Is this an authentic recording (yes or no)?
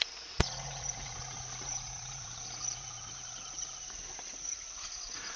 no